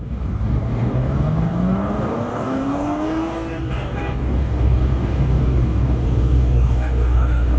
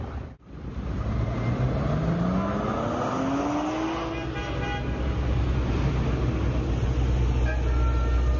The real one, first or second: second